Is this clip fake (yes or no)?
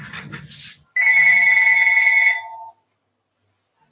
no